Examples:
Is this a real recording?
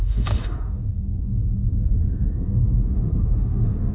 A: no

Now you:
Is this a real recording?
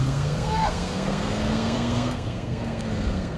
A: no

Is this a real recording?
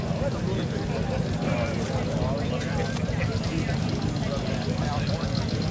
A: yes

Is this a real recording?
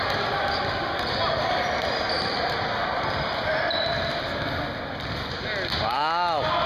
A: yes